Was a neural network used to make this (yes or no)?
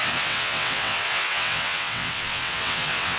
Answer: yes